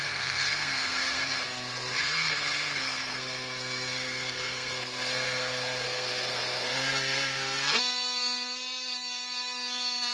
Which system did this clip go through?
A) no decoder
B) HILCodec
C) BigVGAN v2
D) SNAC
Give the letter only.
D